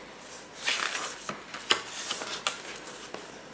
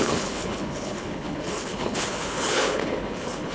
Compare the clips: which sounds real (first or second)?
first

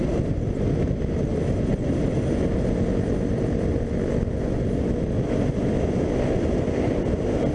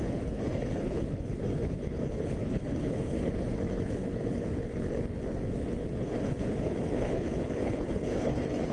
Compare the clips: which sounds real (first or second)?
first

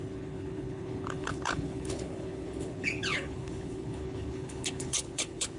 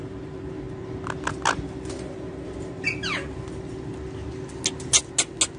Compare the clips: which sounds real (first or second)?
second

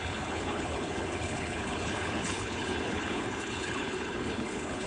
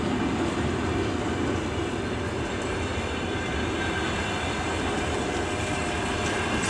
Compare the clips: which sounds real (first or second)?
second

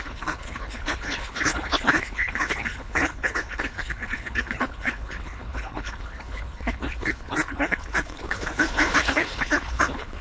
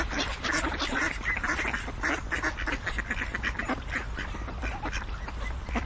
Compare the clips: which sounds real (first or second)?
second